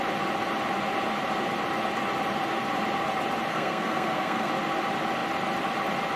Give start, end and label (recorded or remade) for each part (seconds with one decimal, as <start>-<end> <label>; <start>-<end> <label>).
0.0-3.5 recorded; 3.5-4.5 remade; 4.5-6.2 recorded